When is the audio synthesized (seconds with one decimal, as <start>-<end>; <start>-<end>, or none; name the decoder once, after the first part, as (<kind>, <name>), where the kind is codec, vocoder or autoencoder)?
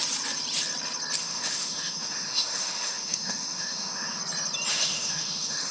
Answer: 1.2-4.2 (autoencoder, DAC-VAE); 4.7-5.7